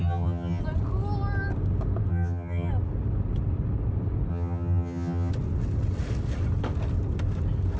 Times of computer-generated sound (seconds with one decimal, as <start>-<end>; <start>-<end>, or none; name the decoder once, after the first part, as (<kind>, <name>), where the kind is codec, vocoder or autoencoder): 0.0-0.6 (vocoder, HiFi-GAN); 2.1-2.7; 4.3-5.3